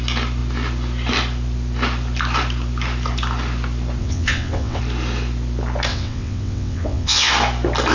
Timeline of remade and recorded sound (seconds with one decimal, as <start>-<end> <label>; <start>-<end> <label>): 0.0-4.0 recorded; 4.0-4.8 remade; 4.8-5.9 recorded; 5.9-7.3 remade; 7.3-7.9 recorded